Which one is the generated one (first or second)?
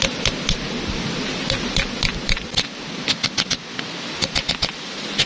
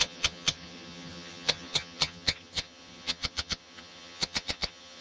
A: second